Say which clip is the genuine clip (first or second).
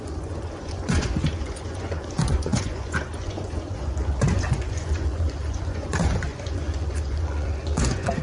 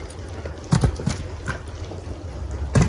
second